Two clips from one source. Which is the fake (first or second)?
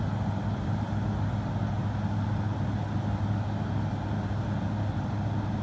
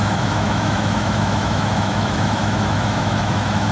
second